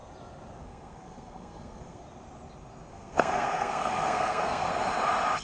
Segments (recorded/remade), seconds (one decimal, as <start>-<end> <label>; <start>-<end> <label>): 0.0-0.6 recorded; 0.6-2.0 remade; 2.0-2.9 recorded; 2.9-4.7 remade; 4.7-5.4 recorded